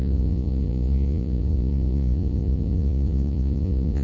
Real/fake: fake